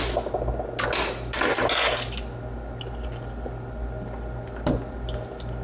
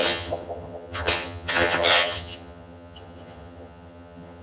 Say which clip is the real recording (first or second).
first